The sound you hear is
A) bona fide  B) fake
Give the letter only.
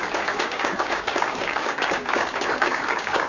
B